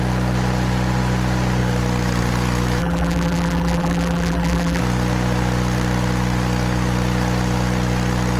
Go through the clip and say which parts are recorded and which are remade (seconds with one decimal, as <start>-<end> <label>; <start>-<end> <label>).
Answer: 0.0-2.8 recorded; 2.8-4.8 remade; 4.8-8.4 recorded